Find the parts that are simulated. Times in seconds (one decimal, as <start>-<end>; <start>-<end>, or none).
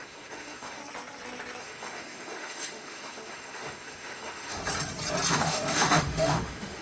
0.0-0.8; 1.6-4.6; 5.3-6.8